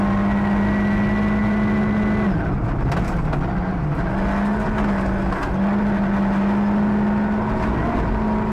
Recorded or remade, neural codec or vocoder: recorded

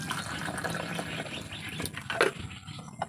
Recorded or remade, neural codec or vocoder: recorded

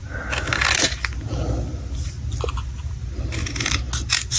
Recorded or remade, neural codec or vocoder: recorded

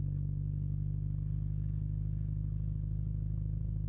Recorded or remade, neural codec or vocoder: recorded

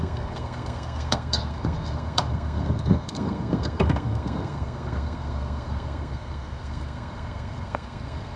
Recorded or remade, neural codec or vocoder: remade, codec, SNAC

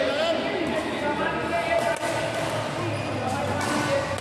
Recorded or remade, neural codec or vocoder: recorded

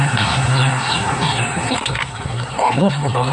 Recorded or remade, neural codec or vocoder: remade, codec, SNAC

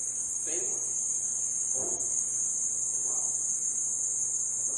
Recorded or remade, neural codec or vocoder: recorded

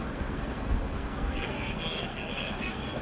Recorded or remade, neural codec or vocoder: remade, codec, SNAC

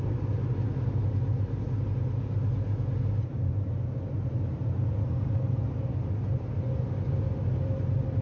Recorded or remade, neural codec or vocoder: recorded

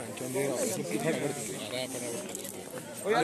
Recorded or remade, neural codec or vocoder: recorded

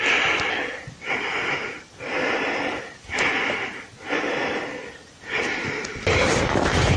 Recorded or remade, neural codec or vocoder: recorded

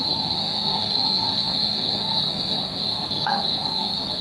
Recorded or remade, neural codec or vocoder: remade, codec, SNAC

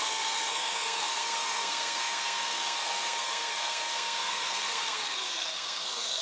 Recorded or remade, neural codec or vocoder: remade, codec, SNAC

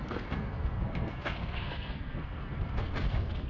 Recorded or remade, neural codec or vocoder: remade, codec, SNAC